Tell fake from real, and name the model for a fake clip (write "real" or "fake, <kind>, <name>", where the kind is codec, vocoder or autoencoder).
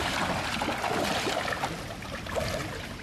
real